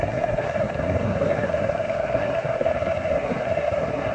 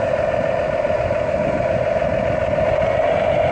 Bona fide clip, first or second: second